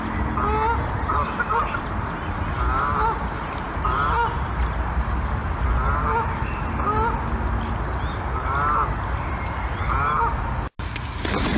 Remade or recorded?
recorded